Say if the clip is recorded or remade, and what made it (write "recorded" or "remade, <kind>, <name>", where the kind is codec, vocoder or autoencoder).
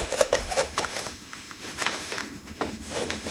remade, autoencoder, DAC-VAE